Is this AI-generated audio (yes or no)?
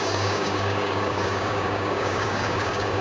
yes